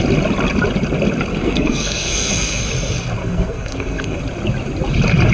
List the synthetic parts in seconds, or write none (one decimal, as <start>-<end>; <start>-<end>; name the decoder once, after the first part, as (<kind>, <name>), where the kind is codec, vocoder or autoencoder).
1.3-2.6 (codec, SNAC); 3.2-4.2